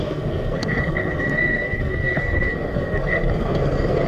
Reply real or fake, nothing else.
fake